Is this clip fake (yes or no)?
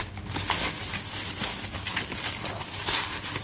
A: no